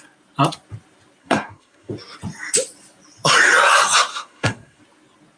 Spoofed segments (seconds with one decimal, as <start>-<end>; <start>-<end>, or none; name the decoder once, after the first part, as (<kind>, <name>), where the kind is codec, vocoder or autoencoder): 1.2-1.9 (codec, SNAC); 4.1-4.8